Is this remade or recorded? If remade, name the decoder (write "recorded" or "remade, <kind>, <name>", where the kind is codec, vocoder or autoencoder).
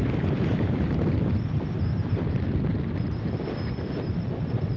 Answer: recorded